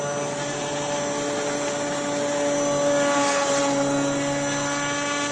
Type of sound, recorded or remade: recorded